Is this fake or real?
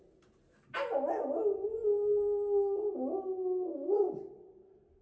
real